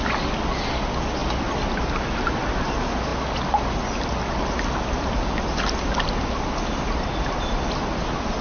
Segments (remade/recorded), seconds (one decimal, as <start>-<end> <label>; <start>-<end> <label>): 0.0-8.4 recorded